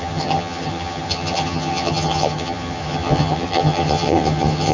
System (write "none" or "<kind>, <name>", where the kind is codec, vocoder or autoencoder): vocoder, HiFi-GAN